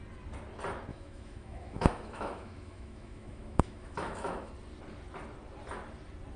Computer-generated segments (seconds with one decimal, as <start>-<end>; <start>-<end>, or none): 0.9-4.5